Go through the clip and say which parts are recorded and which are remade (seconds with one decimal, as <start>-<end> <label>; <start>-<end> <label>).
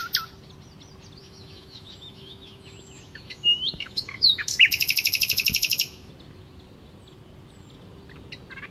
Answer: 0.0-1.2 recorded; 1.2-6.1 remade; 6.1-8.7 recorded